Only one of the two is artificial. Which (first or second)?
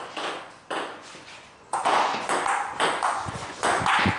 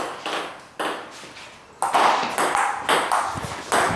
first